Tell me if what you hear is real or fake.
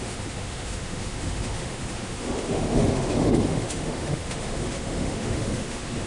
fake